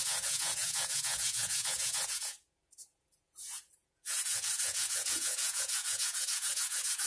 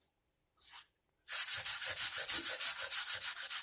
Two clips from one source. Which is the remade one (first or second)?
first